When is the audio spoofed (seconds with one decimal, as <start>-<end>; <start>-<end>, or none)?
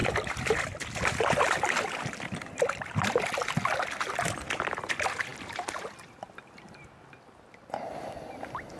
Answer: none